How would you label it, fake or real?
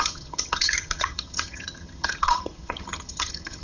fake